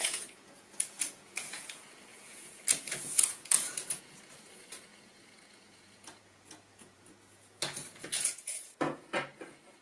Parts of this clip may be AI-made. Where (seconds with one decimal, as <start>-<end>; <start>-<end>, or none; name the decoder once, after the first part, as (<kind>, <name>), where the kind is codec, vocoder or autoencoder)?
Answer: 0.0-9.8 (vocoder, Vocos)